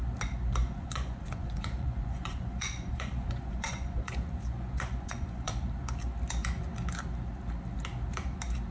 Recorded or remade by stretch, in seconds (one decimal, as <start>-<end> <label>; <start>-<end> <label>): 0.0-0.6 recorded; 0.6-5.5 remade; 5.5-8.7 recorded